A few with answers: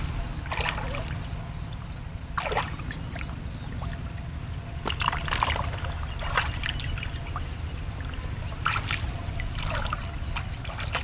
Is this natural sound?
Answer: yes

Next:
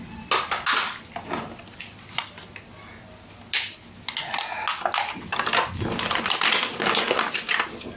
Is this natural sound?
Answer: yes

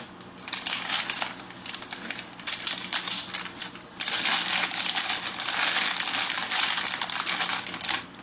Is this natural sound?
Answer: yes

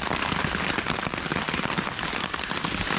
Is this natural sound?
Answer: yes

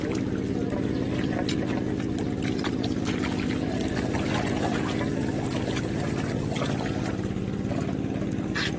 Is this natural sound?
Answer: yes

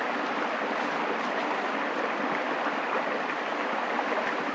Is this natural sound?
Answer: yes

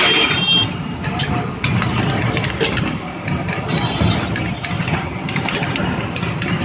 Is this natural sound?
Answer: yes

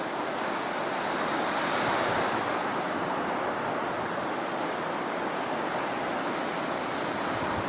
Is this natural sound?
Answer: yes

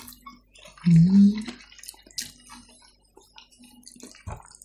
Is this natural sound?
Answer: yes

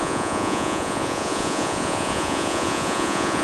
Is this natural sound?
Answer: no